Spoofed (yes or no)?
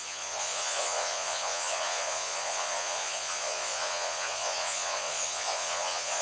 yes